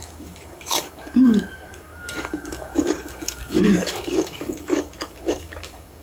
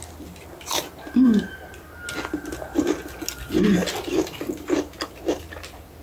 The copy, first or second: first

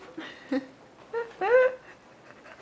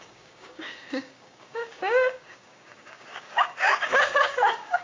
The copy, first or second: second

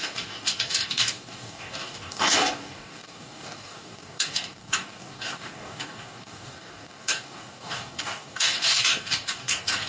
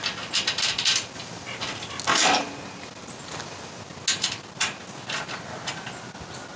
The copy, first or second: first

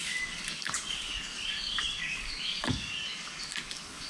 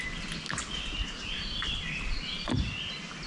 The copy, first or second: first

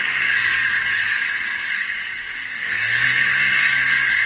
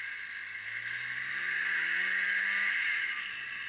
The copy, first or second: first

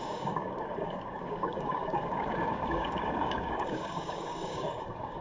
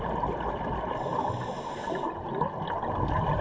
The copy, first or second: first